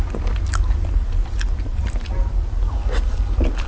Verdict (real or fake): fake